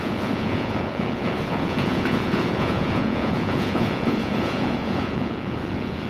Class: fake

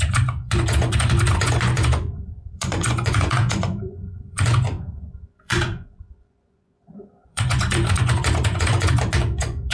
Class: fake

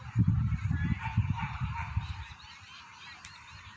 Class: fake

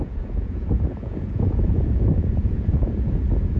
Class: fake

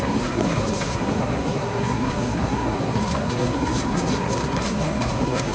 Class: fake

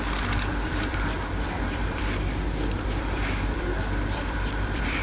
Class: fake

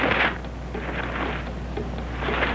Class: real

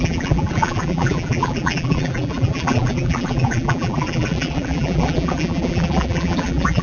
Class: fake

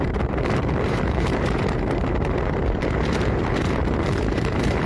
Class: fake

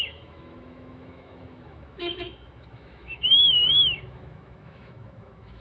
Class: fake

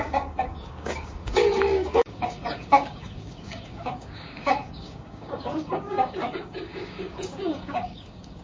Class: fake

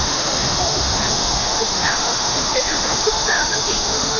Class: fake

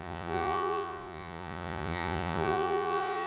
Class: fake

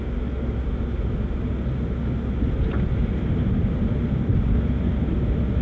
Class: real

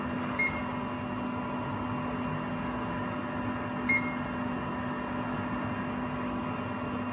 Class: real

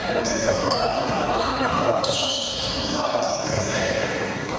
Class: fake